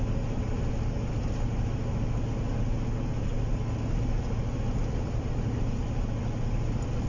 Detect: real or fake real